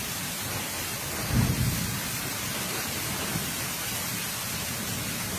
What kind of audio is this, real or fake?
real